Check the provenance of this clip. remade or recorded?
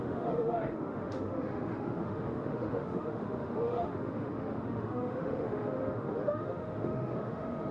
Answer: remade